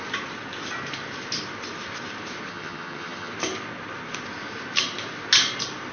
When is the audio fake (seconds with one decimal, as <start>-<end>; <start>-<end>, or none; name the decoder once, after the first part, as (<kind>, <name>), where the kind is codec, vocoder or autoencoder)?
2.5-3.3 (vocoder, HiFi-GAN)